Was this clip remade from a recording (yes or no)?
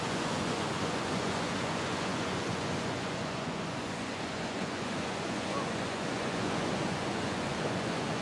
yes